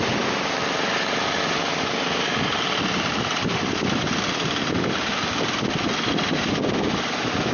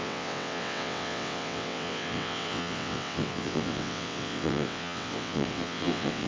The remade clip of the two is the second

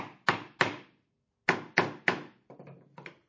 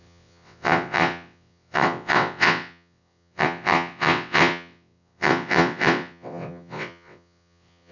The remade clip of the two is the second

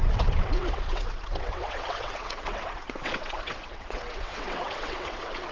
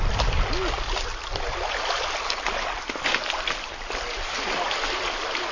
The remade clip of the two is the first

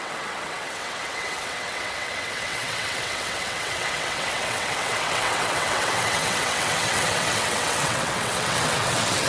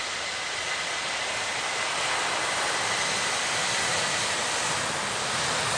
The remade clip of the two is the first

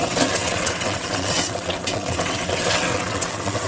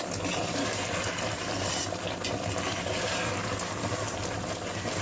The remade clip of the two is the first